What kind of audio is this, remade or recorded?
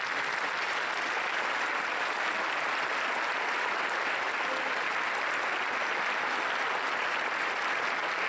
recorded